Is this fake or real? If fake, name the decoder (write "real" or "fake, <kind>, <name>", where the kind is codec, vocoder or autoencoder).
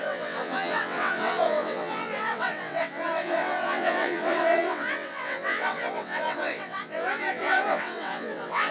fake, vocoder, WaveNeXt